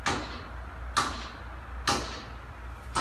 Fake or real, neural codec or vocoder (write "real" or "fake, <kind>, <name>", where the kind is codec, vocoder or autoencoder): real